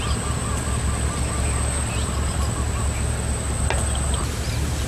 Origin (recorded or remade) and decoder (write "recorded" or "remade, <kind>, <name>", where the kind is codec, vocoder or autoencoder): recorded